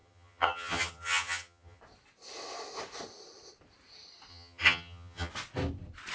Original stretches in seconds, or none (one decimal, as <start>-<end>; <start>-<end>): 1.8-4.3; 5.3-6.1